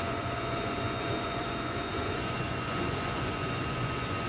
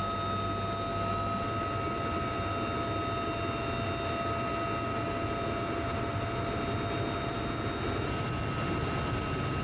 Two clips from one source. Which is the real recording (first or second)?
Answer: second